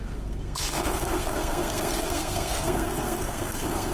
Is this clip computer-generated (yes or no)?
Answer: yes